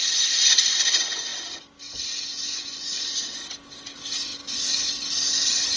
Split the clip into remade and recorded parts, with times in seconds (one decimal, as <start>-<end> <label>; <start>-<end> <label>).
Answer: 0.0-2.3 recorded; 2.3-3.4 remade; 3.4-5.8 recorded